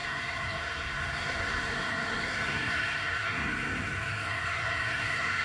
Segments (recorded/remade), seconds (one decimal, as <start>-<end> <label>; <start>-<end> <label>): 0.0-5.4 remade